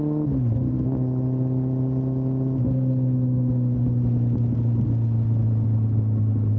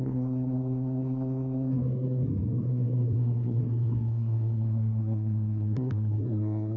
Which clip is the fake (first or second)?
second